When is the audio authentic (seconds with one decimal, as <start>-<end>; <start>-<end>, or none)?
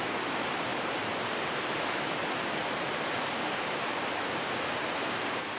0.0-5.6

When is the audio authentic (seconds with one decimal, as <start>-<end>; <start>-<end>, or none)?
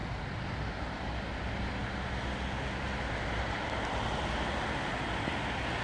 0.0-5.8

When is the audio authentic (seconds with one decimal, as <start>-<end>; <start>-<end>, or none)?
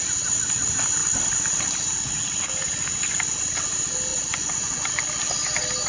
0.0-4.1; 4.8-5.9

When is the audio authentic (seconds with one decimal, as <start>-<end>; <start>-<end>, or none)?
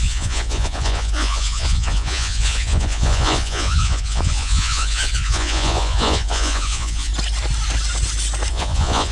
7.1-8.5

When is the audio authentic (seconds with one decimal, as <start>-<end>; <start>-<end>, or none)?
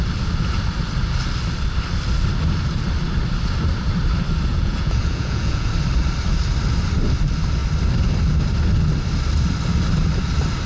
0.0-4.5; 5.7-10.7